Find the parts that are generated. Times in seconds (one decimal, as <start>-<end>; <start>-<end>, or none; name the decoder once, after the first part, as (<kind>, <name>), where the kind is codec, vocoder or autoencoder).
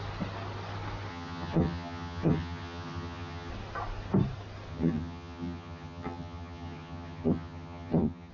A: 1.1-3.5 (vocoder, HiFi-GAN); 4.7-8.3